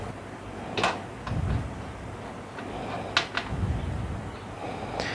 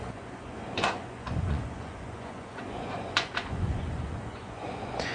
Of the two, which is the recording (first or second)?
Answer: first